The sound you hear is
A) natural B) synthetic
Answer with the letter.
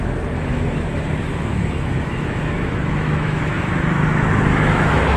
B